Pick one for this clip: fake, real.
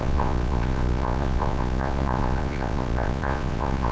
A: fake